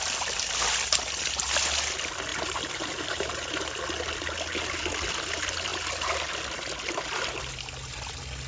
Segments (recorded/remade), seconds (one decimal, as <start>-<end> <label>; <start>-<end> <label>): 0.0-2.3 recorded; 2.3-3.5 remade; 3.5-8.5 recorded